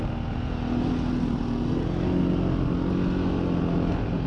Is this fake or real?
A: real